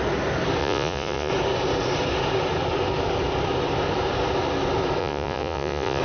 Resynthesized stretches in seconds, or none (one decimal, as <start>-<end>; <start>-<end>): 0.6-1.3; 5.0-6.0